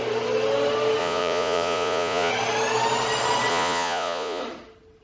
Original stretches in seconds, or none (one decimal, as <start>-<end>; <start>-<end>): 0.0-1.0; 2.3-3.5; 4.4-5.0